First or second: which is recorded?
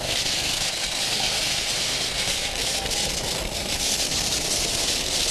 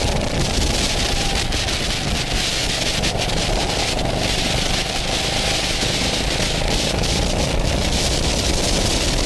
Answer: second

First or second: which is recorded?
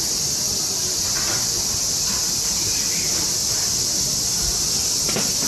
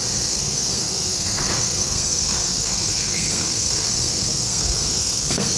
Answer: first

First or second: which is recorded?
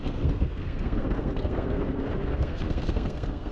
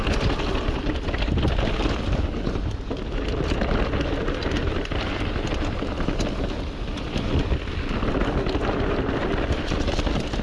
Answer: second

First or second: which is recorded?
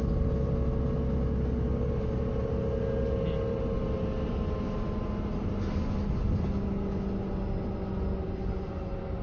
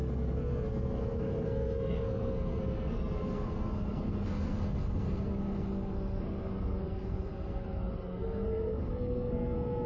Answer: first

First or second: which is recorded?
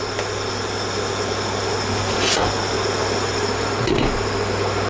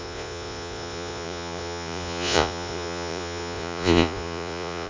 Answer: first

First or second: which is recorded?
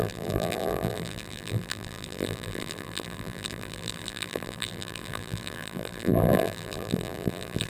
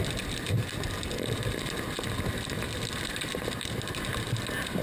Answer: second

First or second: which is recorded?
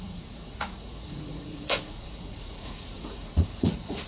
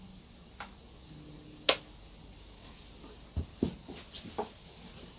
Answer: second